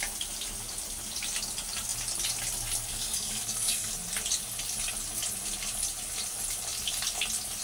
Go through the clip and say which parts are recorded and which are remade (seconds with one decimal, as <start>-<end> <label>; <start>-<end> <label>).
0.0-2.9 recorded; 2.9-3.9 remade; 3.9-7.6 recorded